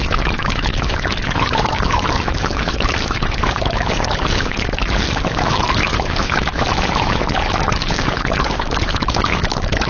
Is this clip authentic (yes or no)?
no